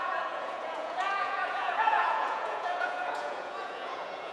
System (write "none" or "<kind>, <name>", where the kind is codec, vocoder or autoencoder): vocoder, Vocos